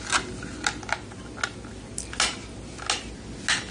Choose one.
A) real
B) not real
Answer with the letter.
A